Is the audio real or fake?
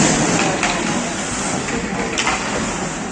real